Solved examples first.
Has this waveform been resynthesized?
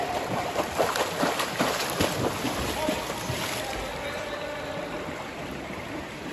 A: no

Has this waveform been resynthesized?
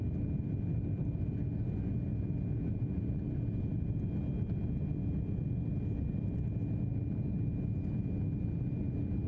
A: no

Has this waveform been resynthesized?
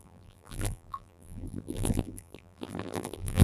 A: yes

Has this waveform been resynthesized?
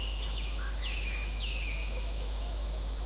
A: yes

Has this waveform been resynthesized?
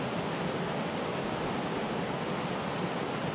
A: no